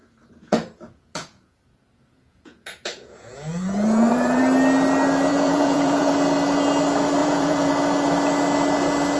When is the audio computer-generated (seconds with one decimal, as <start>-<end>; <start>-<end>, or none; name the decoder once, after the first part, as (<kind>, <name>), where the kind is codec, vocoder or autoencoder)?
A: 0.0-4.4 (vocoder, Vocos); 5.3-6.1; 7.2-7.7